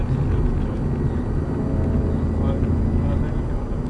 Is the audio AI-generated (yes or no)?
no